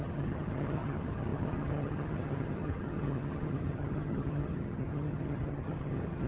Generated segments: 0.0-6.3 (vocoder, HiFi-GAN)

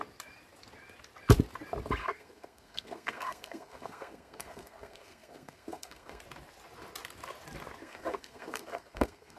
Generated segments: 2.0-6.2 (codec, SNAC); 7.8-9.4

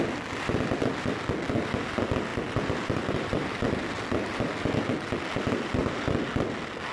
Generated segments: 2.3-4.4 (vocoder, BigVGAN v2)

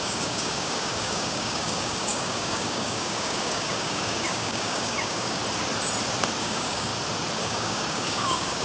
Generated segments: 0.0-5.4 (codec, DAC); 6.4-6.9; 7.4-8.6

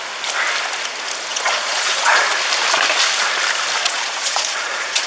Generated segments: 1.3-2.2 (vocoder, Vocos); 3.8-5.1

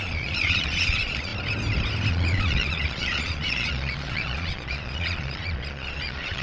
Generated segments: 0.0-1.3 (vocoder, Vocos); 2.1-6.4

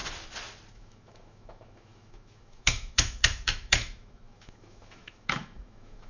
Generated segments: 0.7-6.1 (autoencoder, DAC-VAE)

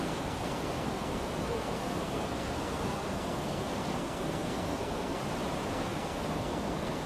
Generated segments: 0.0-5.2 (codec, SNAC); 5.7-7.1